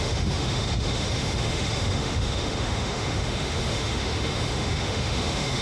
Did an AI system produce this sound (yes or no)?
yes